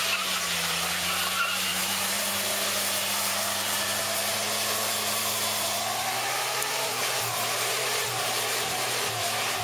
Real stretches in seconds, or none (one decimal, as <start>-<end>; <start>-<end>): 0.0-1.7; 5.8-6.7; 8.9-9.6